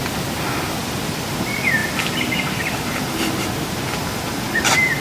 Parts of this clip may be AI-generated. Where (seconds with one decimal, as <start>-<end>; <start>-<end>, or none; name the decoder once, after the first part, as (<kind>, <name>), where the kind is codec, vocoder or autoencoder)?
0.8-5.0 (vocoder, BigVGAN v2)